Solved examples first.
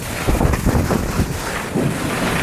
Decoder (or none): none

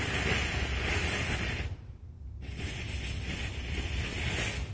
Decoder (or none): none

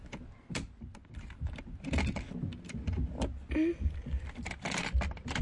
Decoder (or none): none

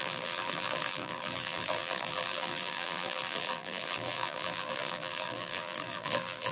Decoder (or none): vocoder, BigVGAN v2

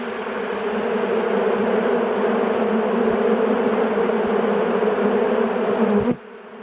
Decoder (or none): none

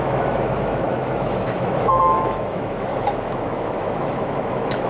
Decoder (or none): autoencoder, DAC-VAE